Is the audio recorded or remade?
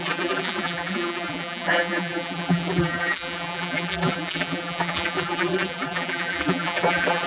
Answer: remade